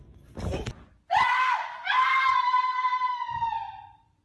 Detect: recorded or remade recorded